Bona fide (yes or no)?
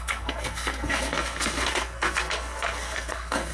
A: no